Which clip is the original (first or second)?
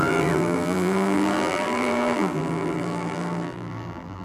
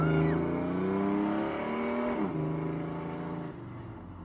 second